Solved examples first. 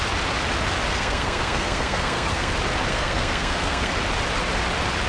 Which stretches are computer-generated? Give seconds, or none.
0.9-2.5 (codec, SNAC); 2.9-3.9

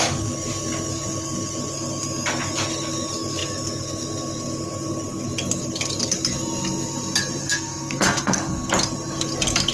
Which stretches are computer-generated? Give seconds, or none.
7.4-8.7 (codec, SNAC)

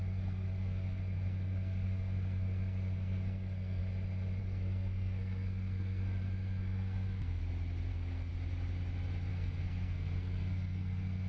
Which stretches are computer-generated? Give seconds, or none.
0.0-3.8 (codec, SNAC); 4.4-7.4; 7.9-8.3; 9.3-11.3

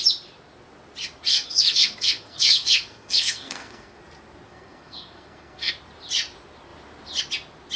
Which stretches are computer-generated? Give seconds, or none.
1.3-4.0 (codec, SNAC); 4.5-5.7

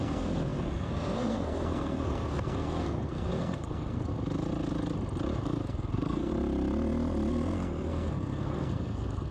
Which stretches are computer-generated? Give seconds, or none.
0.0-4.1 (codec, SNAC); 5.4-6.3; 7.3-9.3